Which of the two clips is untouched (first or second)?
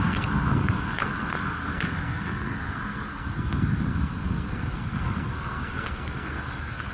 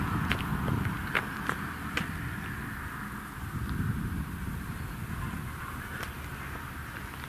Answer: second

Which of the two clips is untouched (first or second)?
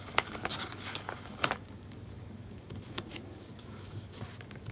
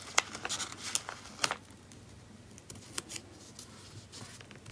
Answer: second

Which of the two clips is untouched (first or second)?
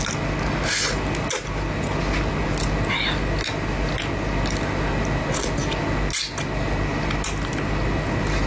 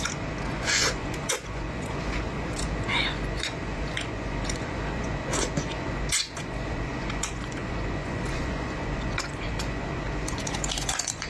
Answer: first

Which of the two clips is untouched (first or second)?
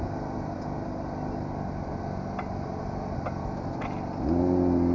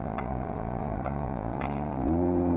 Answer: first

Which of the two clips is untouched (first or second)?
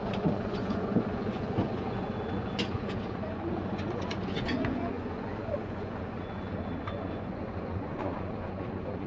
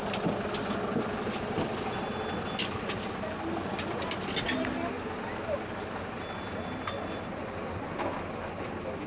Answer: second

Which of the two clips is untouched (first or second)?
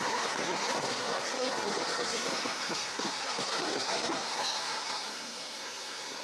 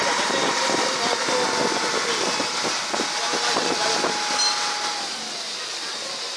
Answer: second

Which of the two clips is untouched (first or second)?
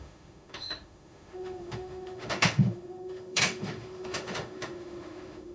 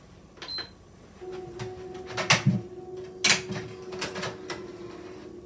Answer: second